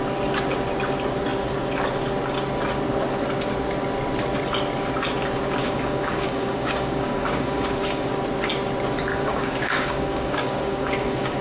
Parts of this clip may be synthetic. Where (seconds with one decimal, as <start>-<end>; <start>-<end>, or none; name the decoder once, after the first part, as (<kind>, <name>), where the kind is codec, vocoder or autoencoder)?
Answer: 5.6-8.1 (codec, DAC); 9.1-11.4